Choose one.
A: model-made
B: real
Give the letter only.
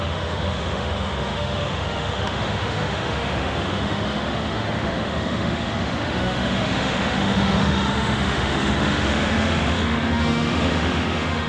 A